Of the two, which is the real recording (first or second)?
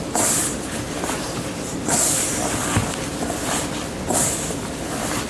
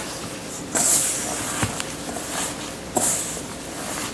second